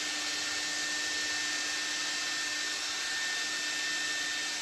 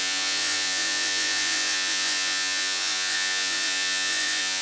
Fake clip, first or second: second